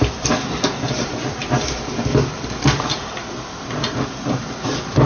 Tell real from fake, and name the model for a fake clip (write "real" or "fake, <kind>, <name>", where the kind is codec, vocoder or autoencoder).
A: real